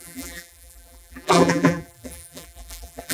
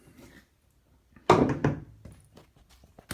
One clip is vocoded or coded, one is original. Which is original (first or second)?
second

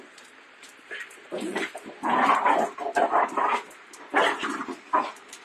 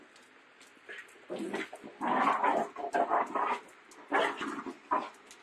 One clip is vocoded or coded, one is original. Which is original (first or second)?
second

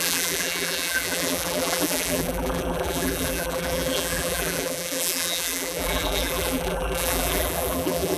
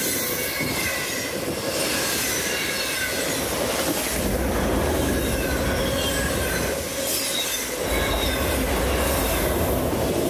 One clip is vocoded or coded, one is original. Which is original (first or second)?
second